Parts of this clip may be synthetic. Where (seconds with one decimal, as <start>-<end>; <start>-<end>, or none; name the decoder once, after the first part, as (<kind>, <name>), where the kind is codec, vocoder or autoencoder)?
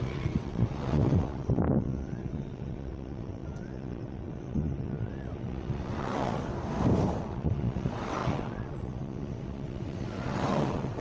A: 0.0-6.5 (vocoder, WaveNeXt); 7.2-11.0